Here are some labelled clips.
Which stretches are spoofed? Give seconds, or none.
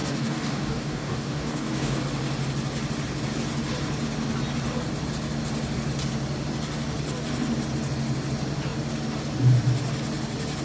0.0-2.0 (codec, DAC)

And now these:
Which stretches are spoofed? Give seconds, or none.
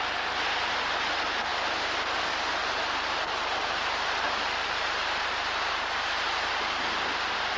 2.6-6.5 (vocoder, BigVGAN v2)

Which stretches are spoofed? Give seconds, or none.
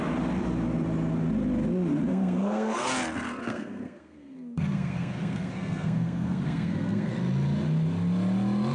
2.1-2.9 (codec, SNAC); 3.4-7.1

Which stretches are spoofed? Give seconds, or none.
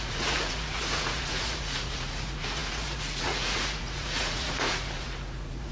0.0-5.7 (vocoder, Vocos)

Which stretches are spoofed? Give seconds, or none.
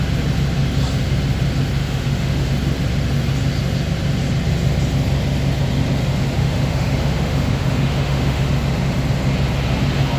1.8-2.5 (autoencoder, DAC-VAE); 6.4-8.5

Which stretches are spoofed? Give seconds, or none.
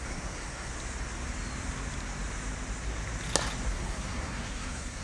0.0-0.7 (codec, SNAC); 3.7-5.0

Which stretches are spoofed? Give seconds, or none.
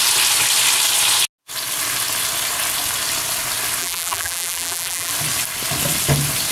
3.8-5.1 (vocoder, BigVGAN v2)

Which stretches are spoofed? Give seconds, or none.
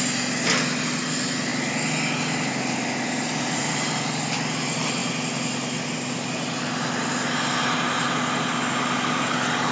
none